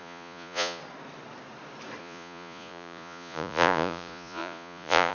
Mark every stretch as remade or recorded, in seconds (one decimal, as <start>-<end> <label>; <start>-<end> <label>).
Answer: 0.0-0.8 remade; 0.8-2.0 recorded; 2.0-5.1 remade